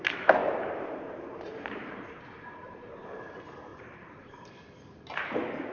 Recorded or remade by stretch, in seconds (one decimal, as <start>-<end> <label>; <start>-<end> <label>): 0.0-0.4 recorded; 0.4-3.2 remade; 3.2-3.7 recorded; 3.7-4.5 remade; 4.5-5.7 recorded